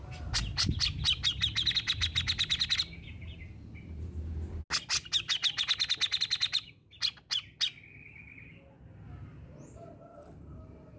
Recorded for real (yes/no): yes